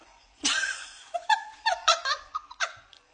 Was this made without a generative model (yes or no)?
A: no